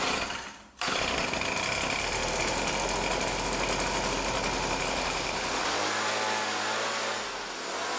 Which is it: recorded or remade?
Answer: recorded